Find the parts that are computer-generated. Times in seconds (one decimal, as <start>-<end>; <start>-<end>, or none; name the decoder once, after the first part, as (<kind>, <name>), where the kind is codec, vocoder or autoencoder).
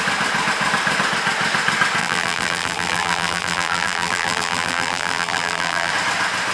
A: 2.0-5.9 (vocoder, BigVGAN v2)